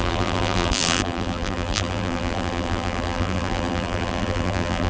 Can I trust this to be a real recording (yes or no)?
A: no